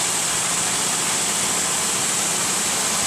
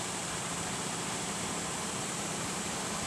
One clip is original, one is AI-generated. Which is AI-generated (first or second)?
second